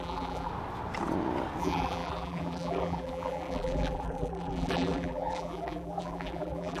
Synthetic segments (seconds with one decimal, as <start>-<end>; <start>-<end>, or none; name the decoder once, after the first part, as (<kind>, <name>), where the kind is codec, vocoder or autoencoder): 0.0-0.5 (vocoder, BigVGAN v2); 1.6-6.8